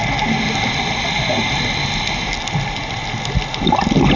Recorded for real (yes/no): yes